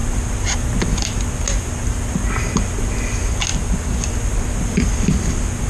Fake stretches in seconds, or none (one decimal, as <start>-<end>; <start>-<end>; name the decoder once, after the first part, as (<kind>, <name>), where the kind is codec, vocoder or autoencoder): none